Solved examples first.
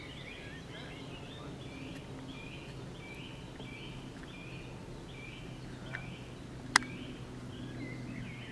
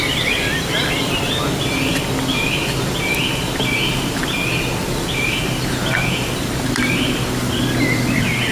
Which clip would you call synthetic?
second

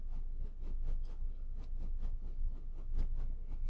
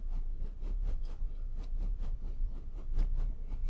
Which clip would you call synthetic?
second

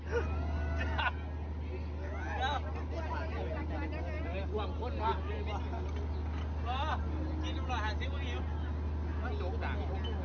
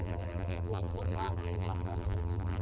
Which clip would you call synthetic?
second